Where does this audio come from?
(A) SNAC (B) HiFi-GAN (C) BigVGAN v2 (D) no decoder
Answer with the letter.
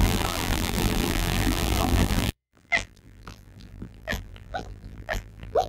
C